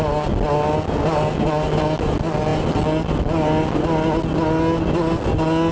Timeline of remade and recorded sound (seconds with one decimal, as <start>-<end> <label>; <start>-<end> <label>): 0.0-5.7 recorded

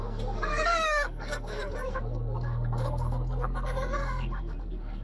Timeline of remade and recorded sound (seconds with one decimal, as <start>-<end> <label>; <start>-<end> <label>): 0.0-5.0 remade

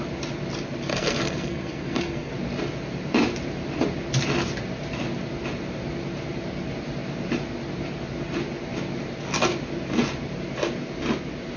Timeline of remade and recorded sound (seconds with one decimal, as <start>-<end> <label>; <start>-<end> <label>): 0.0-0.9 recorded; 0.9-2.3 remade; 2.3-11.6 recorded

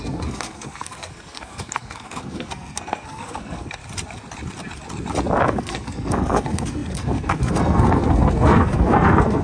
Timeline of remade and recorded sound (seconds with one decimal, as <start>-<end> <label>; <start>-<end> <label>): 0.0-3.8 remade; 3.8-5.4 recorded; 5.4-9.4 remade

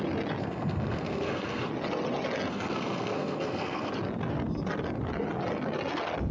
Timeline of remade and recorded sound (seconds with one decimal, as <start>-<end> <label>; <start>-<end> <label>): 0.0-0.4 recorded; 0.4-1.7 remade; 1.7-2.5 recorded; 2.5-3.9 remade; 3.9-6.3 recorded

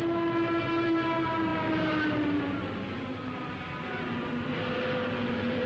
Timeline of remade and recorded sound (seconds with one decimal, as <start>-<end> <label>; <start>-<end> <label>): 0.0-5.7 recorded

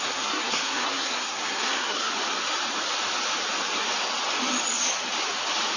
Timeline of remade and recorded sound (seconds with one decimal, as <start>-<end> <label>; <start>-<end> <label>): 0.0-2.1 remade; 2.1-5.8 recorded

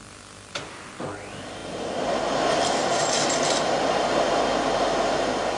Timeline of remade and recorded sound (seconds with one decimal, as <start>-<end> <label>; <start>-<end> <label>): 0.0-5.6 recorded